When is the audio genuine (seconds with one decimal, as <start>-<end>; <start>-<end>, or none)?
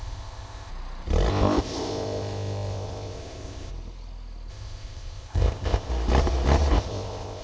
0.7-1.3; 3.7-4.5; 5.9-6.7